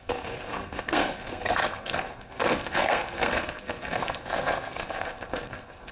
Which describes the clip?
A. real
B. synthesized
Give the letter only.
B